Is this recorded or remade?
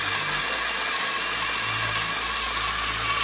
recorded